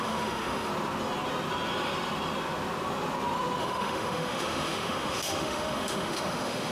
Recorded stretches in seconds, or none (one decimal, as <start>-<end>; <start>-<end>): 0.7-3.6